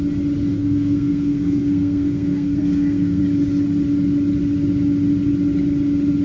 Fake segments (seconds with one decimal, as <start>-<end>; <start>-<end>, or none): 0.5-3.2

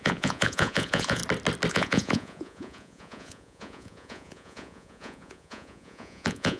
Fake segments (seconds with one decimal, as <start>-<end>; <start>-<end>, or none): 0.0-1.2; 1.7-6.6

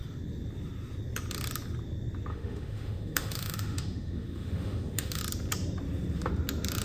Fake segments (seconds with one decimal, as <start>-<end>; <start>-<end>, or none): 2.3-5.2